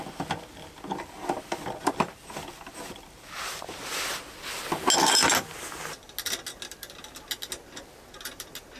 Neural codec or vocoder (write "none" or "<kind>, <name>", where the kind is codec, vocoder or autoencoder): none